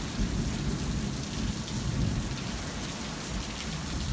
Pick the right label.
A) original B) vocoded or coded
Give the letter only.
A